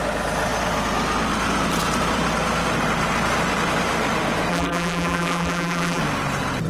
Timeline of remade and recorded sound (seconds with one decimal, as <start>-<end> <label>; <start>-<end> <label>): 0.0-4.5 recorded; 4.5-6.0 remade; 6.0-6.7 recorded